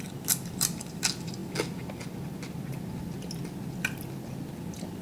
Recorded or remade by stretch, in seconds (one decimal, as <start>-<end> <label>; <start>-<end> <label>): 0.0-5.0 recorded